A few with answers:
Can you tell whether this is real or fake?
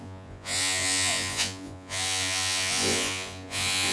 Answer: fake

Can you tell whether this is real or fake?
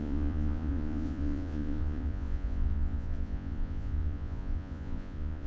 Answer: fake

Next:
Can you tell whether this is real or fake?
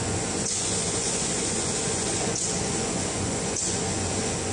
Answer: fake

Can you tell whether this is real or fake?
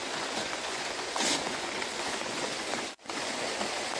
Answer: fake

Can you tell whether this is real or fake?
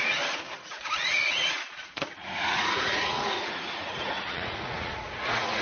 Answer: fake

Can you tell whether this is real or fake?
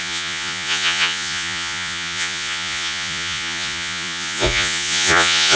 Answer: fake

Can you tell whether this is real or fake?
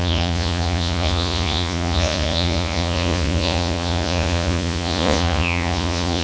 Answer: fake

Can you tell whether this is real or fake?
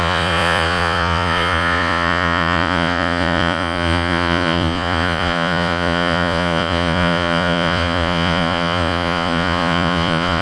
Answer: fake